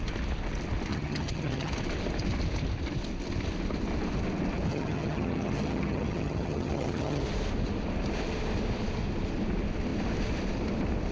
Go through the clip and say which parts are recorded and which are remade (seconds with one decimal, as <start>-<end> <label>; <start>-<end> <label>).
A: 0.0-0.9 recorded; 0.9-1.7 remade; 1.7-4.7 recorded; 4.7-7.2 remade; 7.2-11.1 recorded